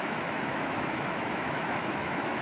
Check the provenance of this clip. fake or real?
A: fake